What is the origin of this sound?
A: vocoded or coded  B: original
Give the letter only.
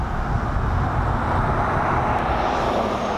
B